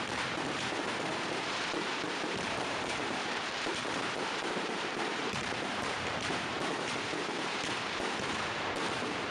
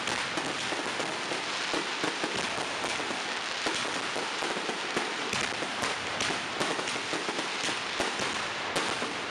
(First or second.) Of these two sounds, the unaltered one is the second